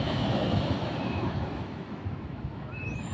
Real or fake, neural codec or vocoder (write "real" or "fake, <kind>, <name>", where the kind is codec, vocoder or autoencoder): fake, autoencoder, DAC-VAE